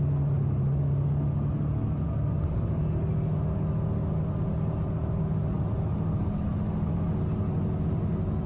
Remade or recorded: recorded